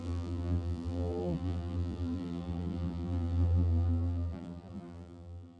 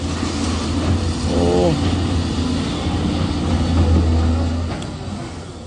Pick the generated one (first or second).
first